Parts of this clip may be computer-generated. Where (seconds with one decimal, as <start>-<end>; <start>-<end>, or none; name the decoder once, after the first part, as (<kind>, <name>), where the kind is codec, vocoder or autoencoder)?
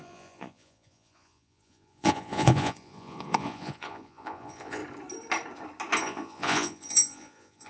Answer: 0.0-4.8 (vocoder, Vocos); 6.0-7.7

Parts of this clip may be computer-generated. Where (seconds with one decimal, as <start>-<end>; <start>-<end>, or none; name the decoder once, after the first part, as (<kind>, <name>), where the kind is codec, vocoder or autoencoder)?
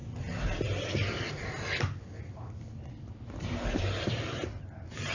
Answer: 3.1-5.1 (vocoder, BigVGAN v2)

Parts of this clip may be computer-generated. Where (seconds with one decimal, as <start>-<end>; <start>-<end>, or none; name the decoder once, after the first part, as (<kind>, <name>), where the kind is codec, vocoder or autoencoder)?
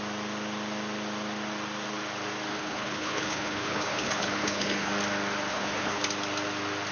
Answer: 2.5-4.9 (codec, HILCodec); 5.5-6.0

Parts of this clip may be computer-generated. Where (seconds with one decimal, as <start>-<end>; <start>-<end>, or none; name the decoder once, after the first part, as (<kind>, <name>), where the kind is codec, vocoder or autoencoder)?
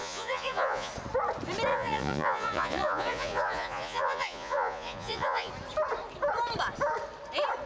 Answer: 0.0-0.9 (vocoder, Vocos); 1.7-5.5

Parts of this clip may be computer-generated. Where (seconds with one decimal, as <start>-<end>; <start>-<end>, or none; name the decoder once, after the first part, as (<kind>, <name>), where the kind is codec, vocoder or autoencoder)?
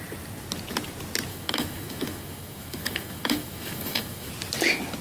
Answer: 1.3-4.3 (autoencoder, DAC-VAE)